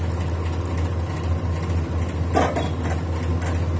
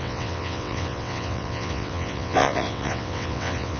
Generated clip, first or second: second